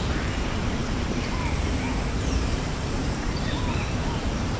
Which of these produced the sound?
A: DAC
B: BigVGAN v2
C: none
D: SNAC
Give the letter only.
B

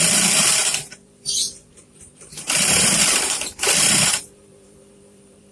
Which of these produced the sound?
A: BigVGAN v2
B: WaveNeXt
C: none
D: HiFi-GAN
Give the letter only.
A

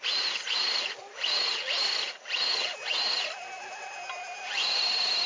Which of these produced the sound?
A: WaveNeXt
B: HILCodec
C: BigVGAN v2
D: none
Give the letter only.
D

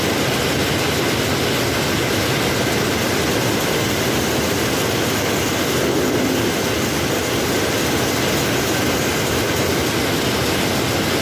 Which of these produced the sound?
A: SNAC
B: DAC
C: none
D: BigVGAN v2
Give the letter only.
C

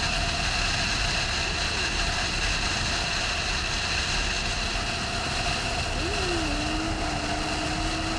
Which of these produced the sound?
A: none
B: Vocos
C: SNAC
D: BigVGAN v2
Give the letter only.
A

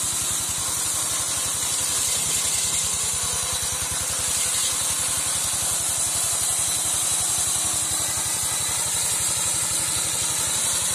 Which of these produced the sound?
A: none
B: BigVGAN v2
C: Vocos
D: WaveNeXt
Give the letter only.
A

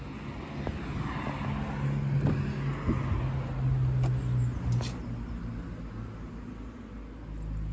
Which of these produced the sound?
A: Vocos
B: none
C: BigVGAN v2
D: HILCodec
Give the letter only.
B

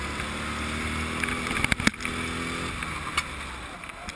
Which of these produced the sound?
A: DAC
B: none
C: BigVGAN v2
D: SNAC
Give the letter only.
B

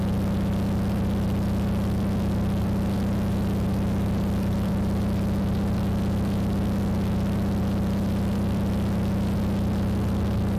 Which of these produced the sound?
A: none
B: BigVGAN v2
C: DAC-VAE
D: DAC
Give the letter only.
A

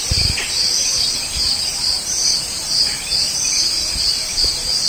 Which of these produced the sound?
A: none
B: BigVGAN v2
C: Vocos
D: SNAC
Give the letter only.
B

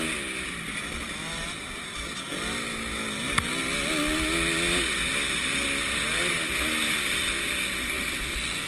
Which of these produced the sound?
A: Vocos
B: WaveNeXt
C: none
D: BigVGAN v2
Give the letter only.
C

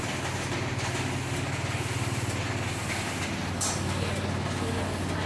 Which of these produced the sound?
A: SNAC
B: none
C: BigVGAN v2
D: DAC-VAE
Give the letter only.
B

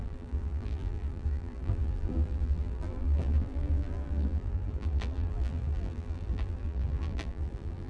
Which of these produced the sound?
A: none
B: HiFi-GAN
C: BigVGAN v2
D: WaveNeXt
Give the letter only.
C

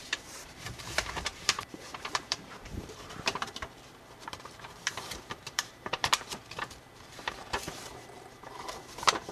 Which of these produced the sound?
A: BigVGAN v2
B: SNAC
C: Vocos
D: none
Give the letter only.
A